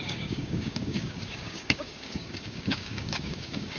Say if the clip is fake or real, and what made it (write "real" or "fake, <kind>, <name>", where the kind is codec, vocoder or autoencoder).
fake, codec, DAC